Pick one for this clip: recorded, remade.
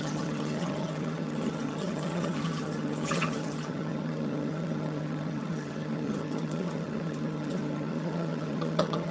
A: remade